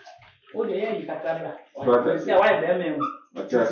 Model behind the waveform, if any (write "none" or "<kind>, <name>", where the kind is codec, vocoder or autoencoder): none